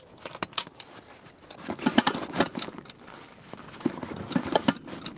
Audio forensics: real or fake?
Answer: real